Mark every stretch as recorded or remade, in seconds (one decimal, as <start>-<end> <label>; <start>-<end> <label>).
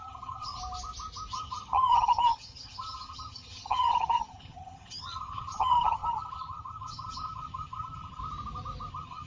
0.0-0.6 remade; 0.6-1.3 recorded; 1.3-8.2 remade; 8.2-8.9 recorded; 8.9-9.3 remade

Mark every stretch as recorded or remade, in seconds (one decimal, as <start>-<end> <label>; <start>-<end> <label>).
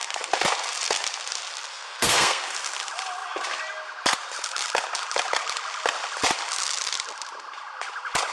0.0-1.7 recorded; 1.7-2.4 remade; 2.4-8.3 recorded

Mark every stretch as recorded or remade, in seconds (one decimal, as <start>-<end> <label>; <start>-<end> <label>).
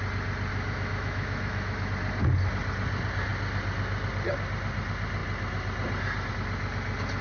0.0-0.5 recorded; 0.5-1.9 remade; 1.9-7.2 recorded